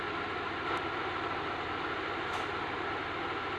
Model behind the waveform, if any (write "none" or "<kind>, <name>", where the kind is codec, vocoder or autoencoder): none